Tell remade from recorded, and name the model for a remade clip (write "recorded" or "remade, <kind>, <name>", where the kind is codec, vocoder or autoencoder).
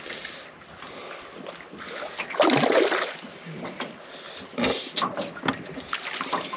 recorded